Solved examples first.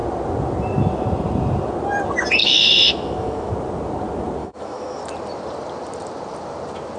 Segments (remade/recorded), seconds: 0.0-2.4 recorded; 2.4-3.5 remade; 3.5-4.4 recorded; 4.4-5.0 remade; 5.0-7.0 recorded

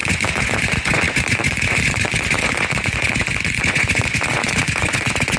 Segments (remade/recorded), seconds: 0.0-5.4 remade

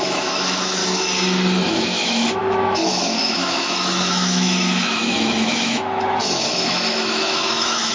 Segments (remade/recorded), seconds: 0.0-0.8 remade; 0.8-1.7 recorded; 1.7-7.9 remade

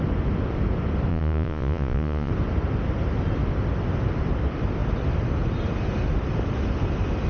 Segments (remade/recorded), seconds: 0.0-1.1 recorded; 1.1-2.3 remade; 2.3-7.3 recorded

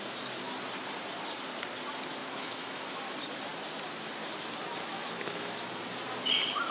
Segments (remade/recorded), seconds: 0.0-2.2 recorded; 2.2-2.8 remade; 2.8-4.9 recorded; 4.9-5.8 remade; 5.8-6.7 recorded